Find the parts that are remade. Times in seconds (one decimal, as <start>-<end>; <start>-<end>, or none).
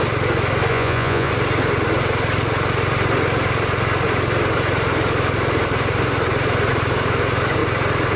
0.7-1.3